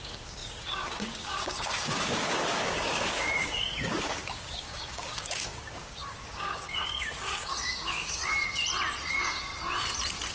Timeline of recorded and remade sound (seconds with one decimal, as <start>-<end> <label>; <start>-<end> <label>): 0.0-8.2 remade; 8.2-9.1 recorded; 9.1-9.5 remade; 9.5-10.3 recorded